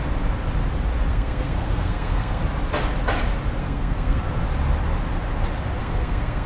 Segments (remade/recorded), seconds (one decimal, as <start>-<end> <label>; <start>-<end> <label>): 0.0-1.1 recorded; 1.1-2.4 remade; 2.4-3.6 recorded; 3.6-4.2 remade; 4.2-5.8 recorded; 5.8-6.5 remade